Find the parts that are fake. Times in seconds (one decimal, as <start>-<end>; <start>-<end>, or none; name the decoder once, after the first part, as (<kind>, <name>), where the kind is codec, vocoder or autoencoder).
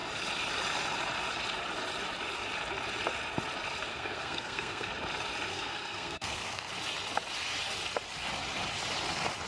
3.9-4.9 (codec, SNAC); 5.5-6.7